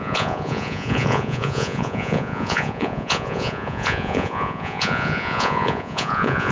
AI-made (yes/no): yes